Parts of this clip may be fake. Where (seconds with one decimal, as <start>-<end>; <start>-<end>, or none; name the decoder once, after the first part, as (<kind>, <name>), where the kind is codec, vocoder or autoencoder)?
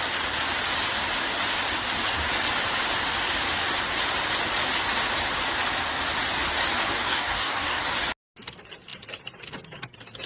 6.9-7.8 (codec, DAC)